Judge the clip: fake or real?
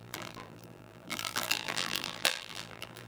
fake